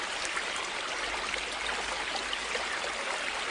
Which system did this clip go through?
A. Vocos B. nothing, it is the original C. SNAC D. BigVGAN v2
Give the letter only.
B